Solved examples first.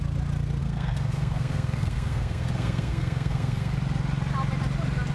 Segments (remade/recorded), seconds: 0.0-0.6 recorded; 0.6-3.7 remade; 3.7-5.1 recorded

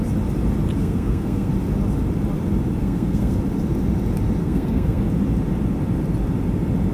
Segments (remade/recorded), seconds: 0.0-0.8 recorded; 0.8-1.5 remade; 1.5-2.8 recorded; 2.8-3.4 remade; 3.4-4.4 recorded; 4.4-5.0 remade; 5.0-6.9 recorded

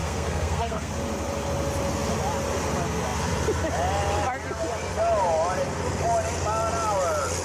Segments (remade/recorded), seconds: 0.0-0.9 remade; 0.9-7.4 recorded

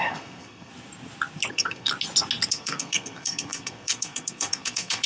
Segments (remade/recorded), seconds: 0.0-0.7 remade; 0.7-1.5 recorded; 1.5-1.9 remade; 1.9-2.5 recorded; 2.5-5.1 remade

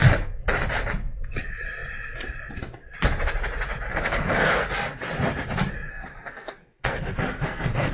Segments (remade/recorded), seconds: 0.0-3.9 recorded; 3.9-4.7 remade; 4.7-5.9 recorded; 5.9-7.9 remade